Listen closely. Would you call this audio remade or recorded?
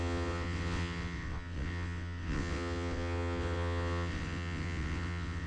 remade